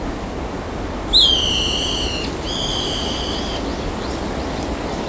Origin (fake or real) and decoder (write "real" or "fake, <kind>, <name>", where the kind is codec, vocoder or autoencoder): real